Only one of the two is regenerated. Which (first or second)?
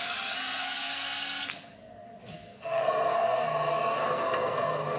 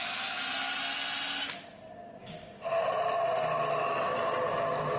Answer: first